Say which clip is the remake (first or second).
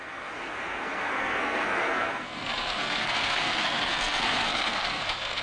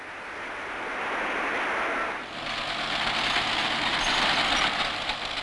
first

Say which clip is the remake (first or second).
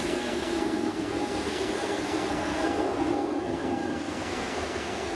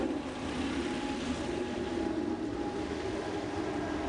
first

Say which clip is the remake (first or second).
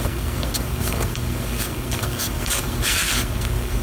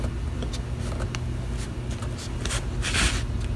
first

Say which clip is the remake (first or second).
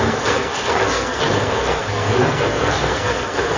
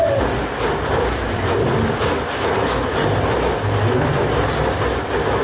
first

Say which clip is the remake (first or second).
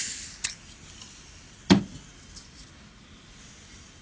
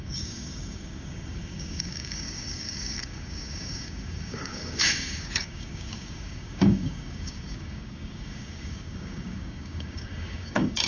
second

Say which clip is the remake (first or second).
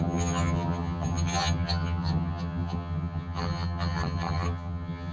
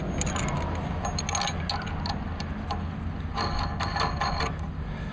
first